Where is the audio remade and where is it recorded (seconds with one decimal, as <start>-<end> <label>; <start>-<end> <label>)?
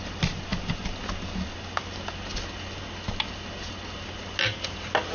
0.0-5.1 recorded